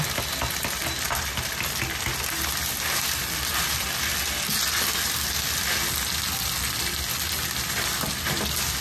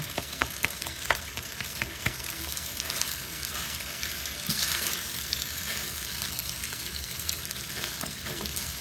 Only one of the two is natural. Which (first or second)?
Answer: first